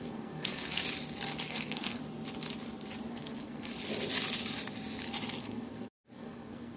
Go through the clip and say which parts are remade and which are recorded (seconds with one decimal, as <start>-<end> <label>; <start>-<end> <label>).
0.0-0.8 remade; 0.8-1.5 recorded; 1.5-2.0 remade; 2.0-3.1 recorded; 3.1-3.7 remade; 3.7-5.4 recorded; 5.4-6.8 remade